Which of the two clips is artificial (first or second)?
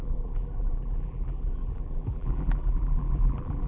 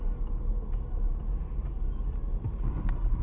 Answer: first